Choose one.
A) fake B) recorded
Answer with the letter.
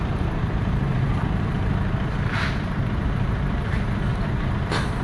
A